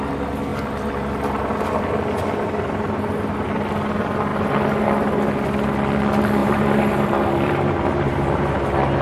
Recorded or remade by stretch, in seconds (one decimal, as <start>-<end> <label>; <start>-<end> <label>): 0.0-6.4 recorded; 6.4-8.5 remade; 8.5-9.0 recorded